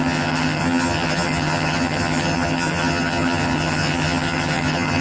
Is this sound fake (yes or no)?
yes